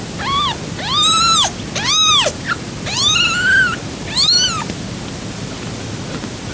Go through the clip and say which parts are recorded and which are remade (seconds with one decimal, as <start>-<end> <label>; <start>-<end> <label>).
0.0-6.5 recorded